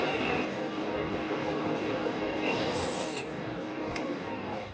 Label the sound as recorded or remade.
remade